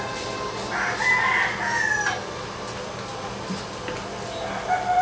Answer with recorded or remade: recorded